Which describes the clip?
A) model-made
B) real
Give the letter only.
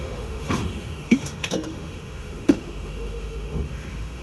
A